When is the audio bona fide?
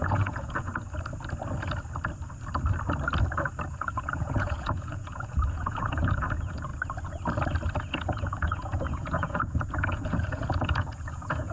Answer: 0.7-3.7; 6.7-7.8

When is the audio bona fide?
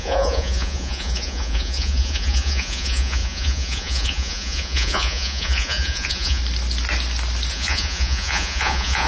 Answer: 6.4-7.5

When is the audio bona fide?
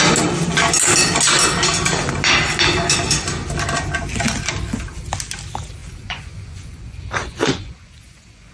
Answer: 0.0-5.8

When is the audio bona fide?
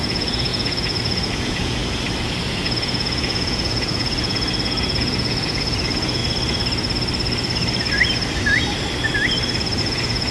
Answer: 1.8-2.5; 6.2-9.8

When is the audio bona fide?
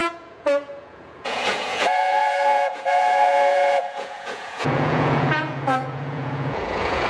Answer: none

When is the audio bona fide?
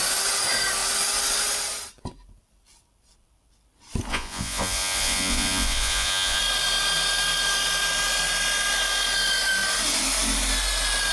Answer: 0.0-4.1; 6.4-11.1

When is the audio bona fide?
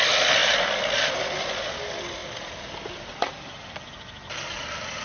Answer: 0.0-5.0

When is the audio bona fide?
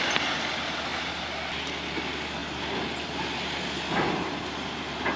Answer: 0.0-5.2